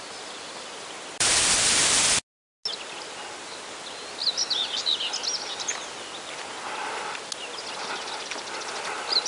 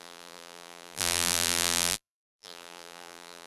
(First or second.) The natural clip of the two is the first